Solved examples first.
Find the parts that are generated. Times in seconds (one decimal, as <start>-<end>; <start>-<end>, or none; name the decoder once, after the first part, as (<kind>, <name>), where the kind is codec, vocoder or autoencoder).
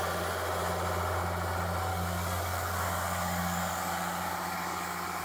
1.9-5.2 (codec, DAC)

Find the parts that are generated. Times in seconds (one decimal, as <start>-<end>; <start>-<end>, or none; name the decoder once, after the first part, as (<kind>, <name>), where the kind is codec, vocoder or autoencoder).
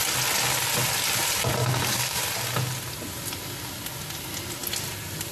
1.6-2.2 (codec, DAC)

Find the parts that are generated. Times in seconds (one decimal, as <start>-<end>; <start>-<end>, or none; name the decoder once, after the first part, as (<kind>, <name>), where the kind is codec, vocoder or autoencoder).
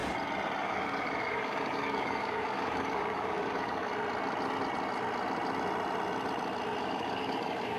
0.6-3.9 (codec, DAC); 6.8-7.8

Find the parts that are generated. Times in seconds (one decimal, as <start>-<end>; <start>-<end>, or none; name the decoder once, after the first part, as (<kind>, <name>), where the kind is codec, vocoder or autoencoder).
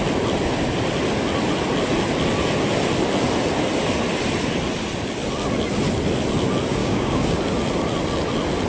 6.8-7.4 (codec, DAC)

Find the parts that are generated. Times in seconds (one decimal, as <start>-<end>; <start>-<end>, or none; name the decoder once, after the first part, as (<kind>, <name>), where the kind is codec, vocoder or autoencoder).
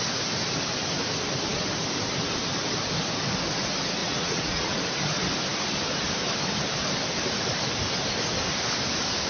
4.0-4.8 (vocoder, Vocos)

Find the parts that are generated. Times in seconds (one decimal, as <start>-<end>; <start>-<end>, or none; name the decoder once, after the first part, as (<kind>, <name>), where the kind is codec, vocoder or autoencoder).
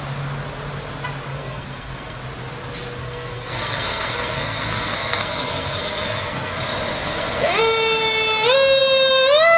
1.3-2.2 (codec, SNAC); 3.0-6.5; 7.0-7.5